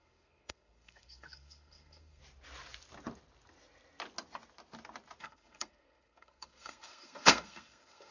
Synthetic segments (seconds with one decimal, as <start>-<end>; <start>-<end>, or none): 0.0-2.2; 5.2-8.1